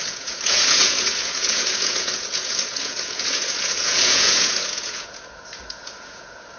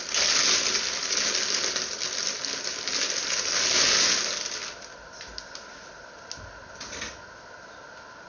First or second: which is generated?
first